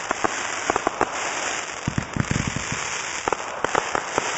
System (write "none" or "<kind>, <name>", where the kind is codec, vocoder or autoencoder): none